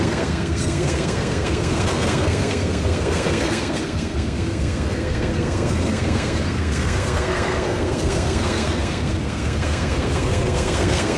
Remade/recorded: remade